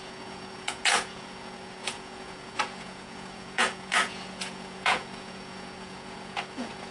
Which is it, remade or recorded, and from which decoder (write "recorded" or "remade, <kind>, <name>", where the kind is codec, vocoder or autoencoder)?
remade, vocoder, Vocos